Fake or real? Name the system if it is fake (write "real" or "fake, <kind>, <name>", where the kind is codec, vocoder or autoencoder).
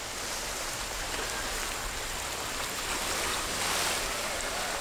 real